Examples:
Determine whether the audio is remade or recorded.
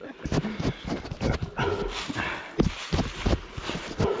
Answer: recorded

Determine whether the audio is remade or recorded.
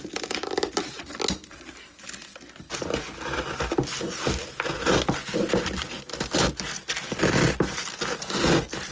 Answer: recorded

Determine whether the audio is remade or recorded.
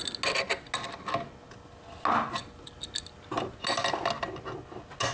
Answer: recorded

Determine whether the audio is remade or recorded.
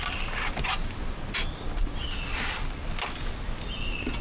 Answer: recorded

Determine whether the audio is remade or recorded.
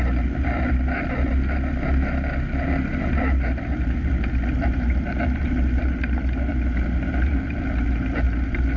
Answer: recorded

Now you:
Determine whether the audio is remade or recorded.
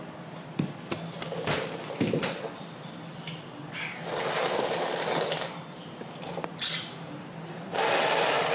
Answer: recorded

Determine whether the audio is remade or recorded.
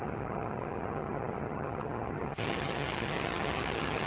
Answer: remade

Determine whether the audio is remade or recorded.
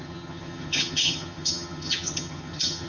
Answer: remade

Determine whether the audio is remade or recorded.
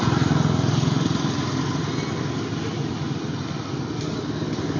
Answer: recorded